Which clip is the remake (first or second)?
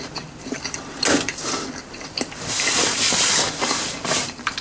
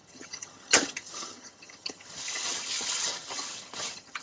second